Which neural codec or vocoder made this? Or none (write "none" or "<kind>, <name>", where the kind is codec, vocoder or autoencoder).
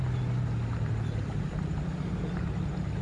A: none